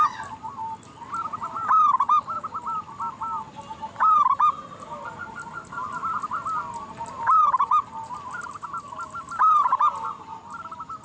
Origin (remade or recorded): recorded